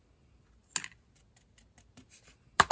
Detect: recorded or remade recorded